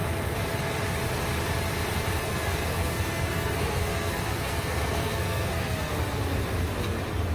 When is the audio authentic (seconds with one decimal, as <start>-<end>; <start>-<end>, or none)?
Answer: 0.0-2.2; 5.9-7.3